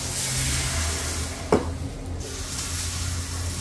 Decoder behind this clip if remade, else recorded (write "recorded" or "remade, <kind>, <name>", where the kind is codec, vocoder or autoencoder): recorded